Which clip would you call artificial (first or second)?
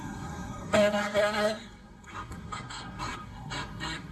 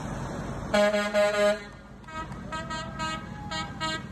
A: first